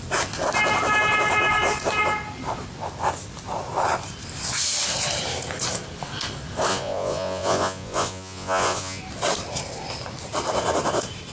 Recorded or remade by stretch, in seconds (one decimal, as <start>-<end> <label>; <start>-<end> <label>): 0.0-6.7 recorded; 6.7-9.0 remade; 9.0-11.3 recorded